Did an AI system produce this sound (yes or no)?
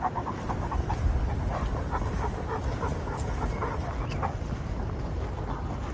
no